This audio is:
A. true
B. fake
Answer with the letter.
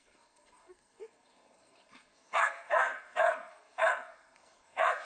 B